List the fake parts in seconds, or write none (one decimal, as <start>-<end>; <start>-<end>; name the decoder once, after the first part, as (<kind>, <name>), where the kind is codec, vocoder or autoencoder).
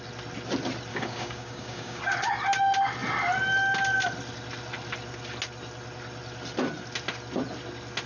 0.9-2.0 (codec, DAC)